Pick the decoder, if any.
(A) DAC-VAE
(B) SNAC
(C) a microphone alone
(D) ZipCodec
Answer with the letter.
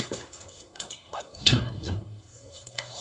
B